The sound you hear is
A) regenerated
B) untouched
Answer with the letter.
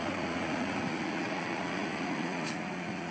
A